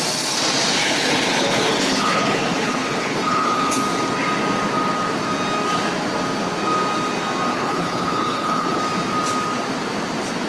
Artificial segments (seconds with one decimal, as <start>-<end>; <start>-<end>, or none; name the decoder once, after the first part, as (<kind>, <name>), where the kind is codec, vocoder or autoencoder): 0.8-3.8 (codec, HILCodec); 7.5-8.8